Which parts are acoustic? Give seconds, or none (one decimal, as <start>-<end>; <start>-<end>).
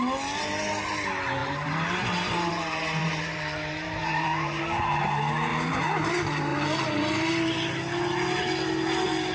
0.0-1.4; 2.5-3.0; 4.6-5.5; 6.1-6.5; 7.3-9.3